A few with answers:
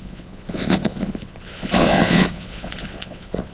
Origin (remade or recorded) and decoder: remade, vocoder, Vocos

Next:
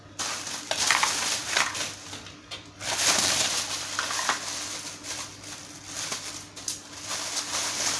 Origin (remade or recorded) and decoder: recorded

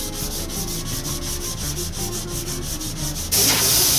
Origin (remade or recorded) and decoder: recorded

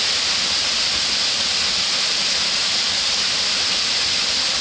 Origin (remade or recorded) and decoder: recorded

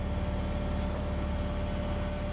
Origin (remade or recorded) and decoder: recorded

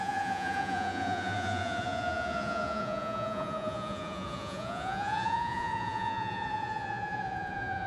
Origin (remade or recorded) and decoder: remade, vocoder, Vocos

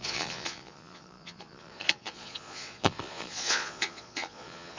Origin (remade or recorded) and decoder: remade, vocoder, Vocos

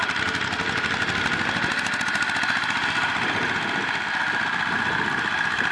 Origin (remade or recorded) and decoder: recorded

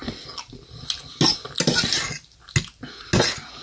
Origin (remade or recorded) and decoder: recorded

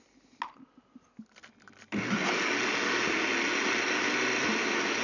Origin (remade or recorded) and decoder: recorded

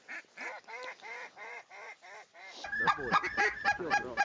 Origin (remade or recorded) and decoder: recorded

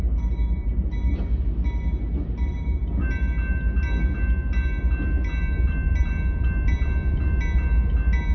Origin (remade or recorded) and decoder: recorded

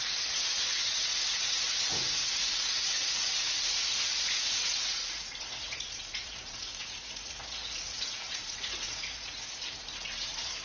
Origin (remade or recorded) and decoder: remade, vocoder, Vocos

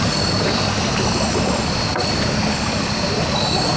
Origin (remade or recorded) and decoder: recorded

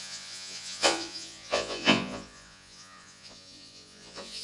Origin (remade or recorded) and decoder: remade, vocoder, Vocos